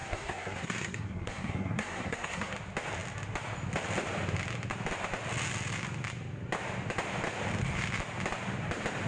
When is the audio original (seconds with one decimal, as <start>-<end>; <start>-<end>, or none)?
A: 2.5-9.1